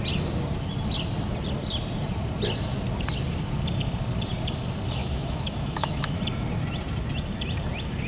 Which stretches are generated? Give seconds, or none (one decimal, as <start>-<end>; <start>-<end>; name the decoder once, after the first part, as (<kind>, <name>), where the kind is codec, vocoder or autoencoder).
5.0-6.2 (autoencoder, DAC-VAE)